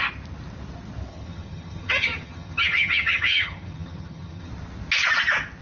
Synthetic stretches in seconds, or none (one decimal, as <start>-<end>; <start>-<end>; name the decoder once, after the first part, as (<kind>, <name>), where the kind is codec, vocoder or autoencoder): 1.1-4.5 (vocoder, HiFi-GAN)